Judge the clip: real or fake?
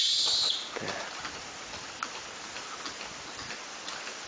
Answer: real